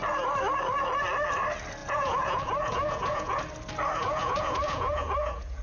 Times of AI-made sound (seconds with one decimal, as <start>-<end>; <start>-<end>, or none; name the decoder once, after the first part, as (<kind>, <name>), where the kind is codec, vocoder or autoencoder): 1.8-3.4 (vocoder, Vocos); 4.0-5.6